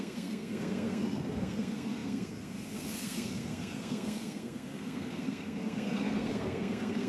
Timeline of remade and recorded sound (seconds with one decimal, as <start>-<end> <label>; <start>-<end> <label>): 0.0-7.1 remade